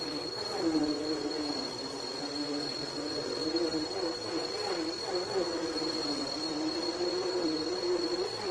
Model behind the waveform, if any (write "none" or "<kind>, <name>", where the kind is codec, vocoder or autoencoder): vocoder, WaveNeXt